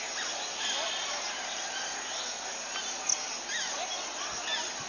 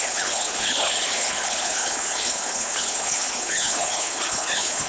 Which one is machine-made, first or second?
second